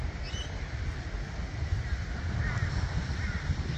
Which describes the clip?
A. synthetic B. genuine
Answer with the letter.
B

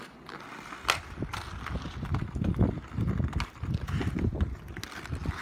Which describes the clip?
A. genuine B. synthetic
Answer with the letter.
A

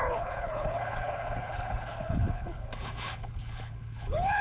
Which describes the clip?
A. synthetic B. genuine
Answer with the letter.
A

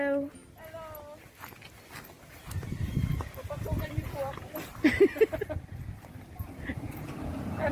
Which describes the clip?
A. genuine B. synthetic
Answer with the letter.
A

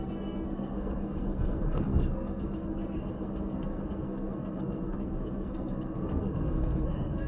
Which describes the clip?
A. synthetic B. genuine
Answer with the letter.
A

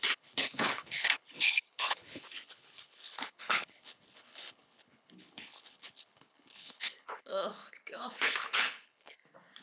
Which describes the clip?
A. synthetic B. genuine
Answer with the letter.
A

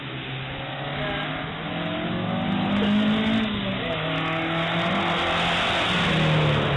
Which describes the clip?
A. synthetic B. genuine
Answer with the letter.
B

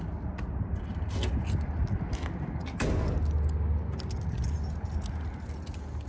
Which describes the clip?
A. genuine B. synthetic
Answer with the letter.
A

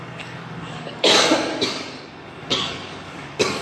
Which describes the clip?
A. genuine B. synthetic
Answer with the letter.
B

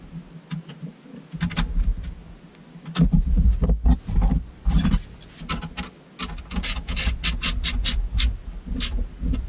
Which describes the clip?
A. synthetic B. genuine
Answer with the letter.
B